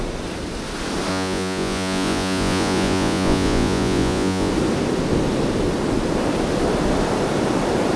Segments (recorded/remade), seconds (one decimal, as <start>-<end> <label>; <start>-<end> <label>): 0.0-1.1 recorded; 1.1-4.5 remade; 4.5-8.0 recorded